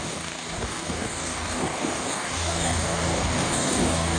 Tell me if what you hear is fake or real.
fake